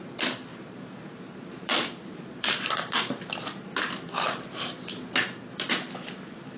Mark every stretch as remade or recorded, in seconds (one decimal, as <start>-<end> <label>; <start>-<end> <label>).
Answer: 0.0-0.5 recorded; 0.5-3.0 remade; 3.0-6.6 recorded